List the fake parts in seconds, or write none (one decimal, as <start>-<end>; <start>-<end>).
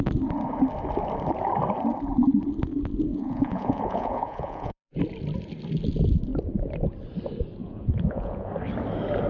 3.1-5.0; 7.6-8.5